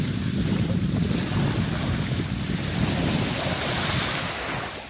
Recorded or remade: recorded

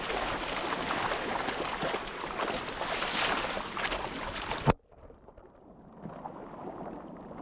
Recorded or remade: recorded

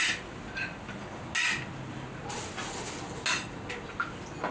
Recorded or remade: recorded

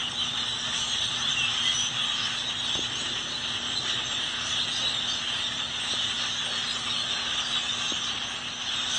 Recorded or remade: recorded